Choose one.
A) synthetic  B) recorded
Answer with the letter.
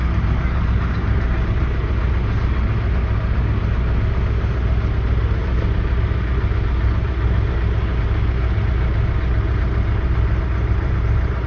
B